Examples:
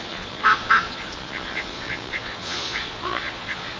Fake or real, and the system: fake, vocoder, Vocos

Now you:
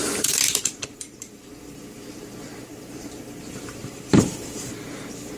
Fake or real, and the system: fake, vocoder, BigVGAN v2